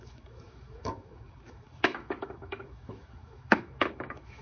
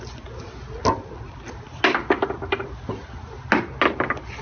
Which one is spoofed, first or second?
first